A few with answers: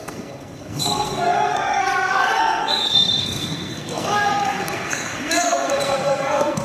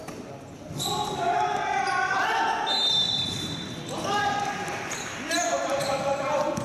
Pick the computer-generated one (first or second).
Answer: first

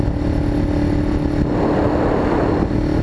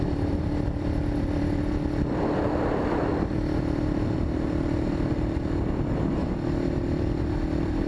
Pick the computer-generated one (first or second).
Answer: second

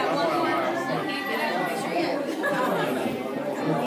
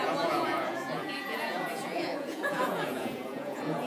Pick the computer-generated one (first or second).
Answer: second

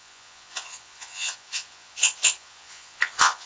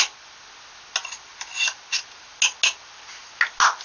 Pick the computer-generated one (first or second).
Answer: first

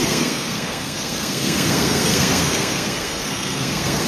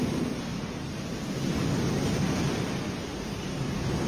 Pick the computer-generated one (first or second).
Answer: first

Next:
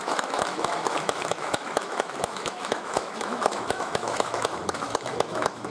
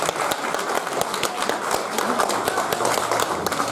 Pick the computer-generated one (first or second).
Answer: first